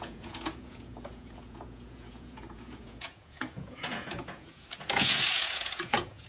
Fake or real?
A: fake